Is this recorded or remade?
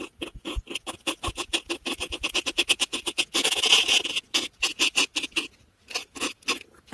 remade